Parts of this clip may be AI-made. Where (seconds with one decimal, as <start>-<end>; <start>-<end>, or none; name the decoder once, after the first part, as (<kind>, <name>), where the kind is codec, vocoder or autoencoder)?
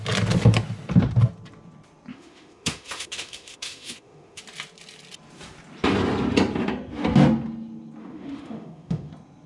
2.1-4.4 (autoencoder, DAC-VAE); 8.0-9.1